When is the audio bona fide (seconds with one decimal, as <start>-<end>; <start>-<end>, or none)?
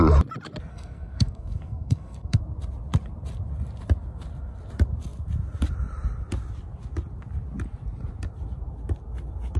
0.0-0.7; 2.4-9.6